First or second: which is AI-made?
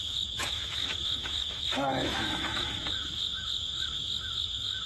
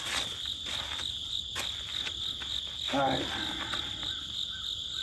first